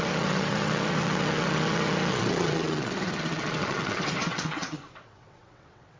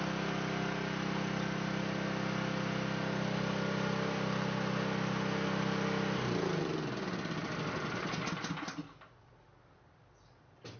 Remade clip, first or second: first